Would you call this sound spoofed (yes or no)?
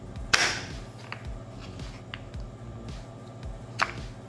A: no